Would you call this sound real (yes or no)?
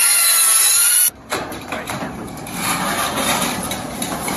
no